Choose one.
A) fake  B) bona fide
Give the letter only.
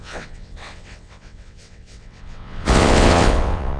A